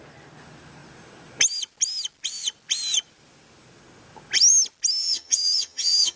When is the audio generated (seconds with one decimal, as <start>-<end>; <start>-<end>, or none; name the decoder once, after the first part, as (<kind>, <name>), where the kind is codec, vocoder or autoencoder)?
5.0-6.2 (vocoder, HiFi-GAN)